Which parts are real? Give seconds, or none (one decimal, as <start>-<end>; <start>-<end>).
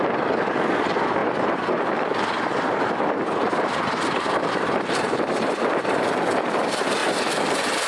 0.0-1.2; 5.8-7.0